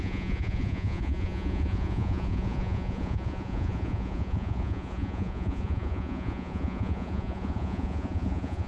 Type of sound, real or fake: fake